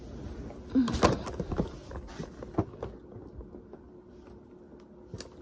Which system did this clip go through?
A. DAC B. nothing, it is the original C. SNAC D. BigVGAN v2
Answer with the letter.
B